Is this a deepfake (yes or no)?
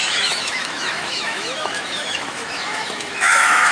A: yes